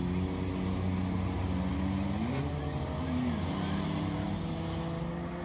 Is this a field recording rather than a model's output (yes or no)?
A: yes